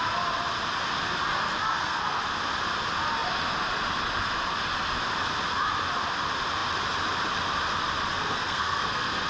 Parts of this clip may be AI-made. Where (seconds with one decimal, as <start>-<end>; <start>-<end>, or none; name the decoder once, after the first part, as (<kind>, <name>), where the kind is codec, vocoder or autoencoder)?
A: 1.7-2.2 (codec, SNAC); 8.1-9.3